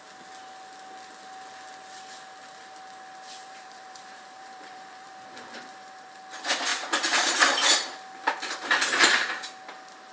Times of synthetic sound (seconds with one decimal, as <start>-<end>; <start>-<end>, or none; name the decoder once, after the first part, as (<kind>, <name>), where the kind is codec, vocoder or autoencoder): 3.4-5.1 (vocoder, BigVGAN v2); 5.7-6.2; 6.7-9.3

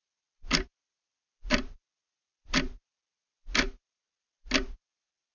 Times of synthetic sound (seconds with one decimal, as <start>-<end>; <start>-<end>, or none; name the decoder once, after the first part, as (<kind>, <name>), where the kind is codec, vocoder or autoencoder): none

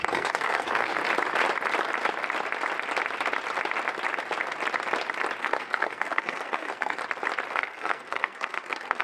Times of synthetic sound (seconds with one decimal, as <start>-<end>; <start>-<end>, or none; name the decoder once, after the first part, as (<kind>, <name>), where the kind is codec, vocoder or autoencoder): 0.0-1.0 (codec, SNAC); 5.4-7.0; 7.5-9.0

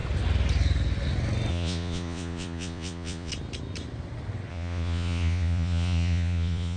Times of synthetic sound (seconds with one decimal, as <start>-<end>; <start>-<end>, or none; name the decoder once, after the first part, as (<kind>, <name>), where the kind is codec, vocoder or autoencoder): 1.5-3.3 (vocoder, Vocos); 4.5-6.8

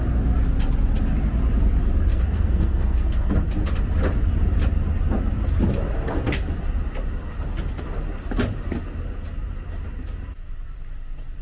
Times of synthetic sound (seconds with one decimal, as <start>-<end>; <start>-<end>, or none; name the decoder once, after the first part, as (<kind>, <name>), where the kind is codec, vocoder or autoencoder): 2.1-3.3 (codec, SNAC)

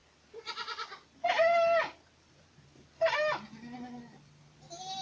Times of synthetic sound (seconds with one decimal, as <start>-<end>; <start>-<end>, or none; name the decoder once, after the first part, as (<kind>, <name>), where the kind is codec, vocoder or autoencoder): none